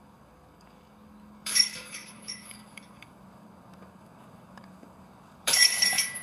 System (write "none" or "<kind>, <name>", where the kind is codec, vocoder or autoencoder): codec, DAC